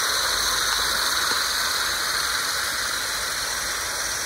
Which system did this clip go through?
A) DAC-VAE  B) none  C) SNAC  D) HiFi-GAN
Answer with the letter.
B